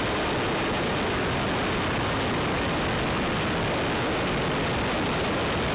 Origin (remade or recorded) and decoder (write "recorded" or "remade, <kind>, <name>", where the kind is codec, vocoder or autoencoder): recorded